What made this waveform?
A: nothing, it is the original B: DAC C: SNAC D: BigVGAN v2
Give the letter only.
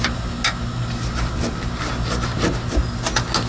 A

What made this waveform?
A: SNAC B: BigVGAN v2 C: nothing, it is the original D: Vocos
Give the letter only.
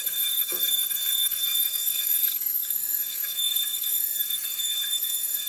A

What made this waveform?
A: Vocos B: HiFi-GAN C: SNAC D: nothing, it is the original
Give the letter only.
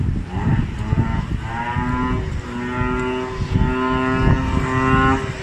D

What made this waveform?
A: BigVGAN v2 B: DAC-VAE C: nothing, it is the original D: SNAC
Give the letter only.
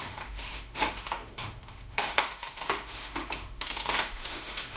B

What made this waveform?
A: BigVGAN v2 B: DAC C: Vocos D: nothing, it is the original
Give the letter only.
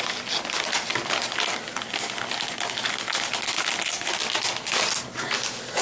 D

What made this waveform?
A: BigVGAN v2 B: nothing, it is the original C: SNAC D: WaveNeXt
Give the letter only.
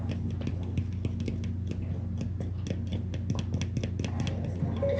B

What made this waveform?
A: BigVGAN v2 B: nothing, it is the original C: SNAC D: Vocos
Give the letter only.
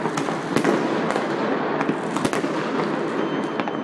B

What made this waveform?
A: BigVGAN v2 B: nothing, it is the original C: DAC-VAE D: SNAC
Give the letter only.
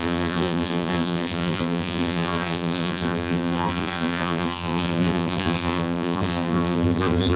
A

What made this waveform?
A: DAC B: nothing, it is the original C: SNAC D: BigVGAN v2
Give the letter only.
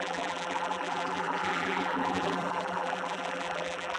D